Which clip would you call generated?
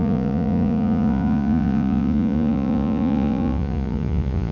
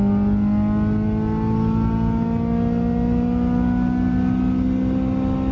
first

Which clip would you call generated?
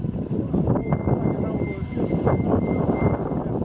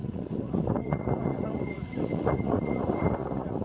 second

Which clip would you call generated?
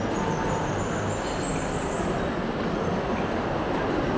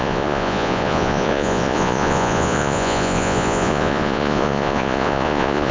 second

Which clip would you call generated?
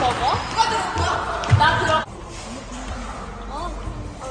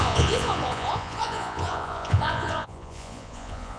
second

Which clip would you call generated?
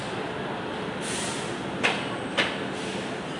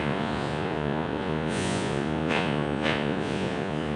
second